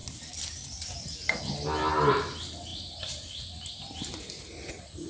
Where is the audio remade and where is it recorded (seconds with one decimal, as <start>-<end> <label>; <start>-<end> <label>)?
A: 0.0-2.7 recorded; 2.7-4.2 remade; 4.2-5.1 recorded